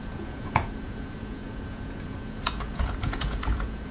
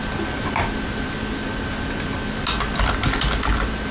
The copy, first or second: first